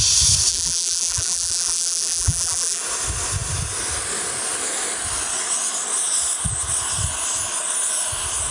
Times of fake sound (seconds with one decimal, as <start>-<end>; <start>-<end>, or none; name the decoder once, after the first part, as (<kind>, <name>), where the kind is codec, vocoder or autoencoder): 0.5-2.8 (vocoder, BigVGAN v2)